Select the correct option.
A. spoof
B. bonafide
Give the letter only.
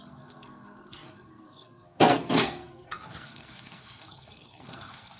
A